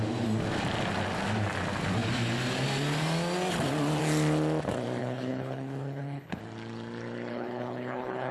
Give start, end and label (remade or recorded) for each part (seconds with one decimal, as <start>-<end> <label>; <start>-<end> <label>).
0.0-5.0 recorded; 5.0-6.4 remade; 6.4-7.3 recorded; 7.3-8.3 remade